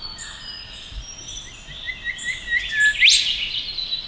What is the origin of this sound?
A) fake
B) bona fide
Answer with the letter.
B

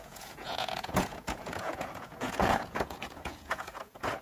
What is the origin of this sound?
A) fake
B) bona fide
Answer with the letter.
A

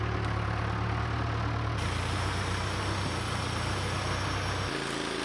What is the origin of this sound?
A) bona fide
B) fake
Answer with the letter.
A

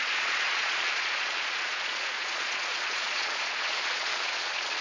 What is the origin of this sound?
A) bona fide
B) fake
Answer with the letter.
B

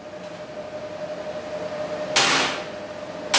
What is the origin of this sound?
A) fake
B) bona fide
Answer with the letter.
B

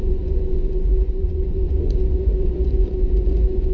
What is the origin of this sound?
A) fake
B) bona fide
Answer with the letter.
A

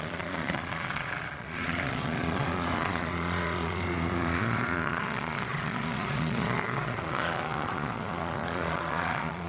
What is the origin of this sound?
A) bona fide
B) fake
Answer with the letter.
B